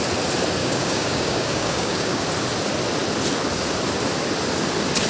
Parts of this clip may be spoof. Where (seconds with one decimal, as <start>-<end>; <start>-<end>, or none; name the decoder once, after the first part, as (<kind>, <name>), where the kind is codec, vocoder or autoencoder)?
0.6-2.2 (codec, DAC)